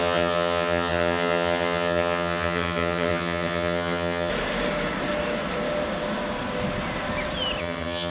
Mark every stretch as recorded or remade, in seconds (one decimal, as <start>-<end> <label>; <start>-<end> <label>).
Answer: 0.0-4.3 remade; 4.3-7.6 recorded; 7.6-8.1 remade